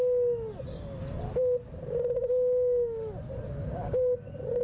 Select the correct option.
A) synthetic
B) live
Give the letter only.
B